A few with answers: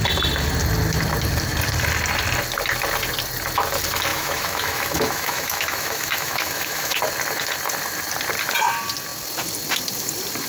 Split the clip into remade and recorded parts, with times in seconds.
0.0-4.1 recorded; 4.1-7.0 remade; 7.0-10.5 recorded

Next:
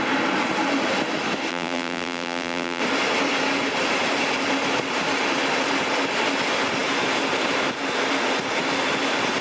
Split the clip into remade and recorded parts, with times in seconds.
0.0-1.5 recorded; 1.5-2.8 remade; 2.8-9.4 recorded

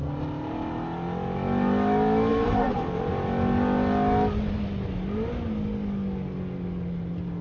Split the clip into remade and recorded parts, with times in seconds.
0.0-2.3 recorded; 2.3-3.1 remade; 3.1-7.4 recorded